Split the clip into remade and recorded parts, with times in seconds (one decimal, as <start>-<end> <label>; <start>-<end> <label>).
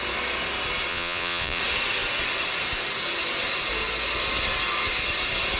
0.0-0.9 recorded; 0.9-1.6 remade; 1.6-5.6 recorded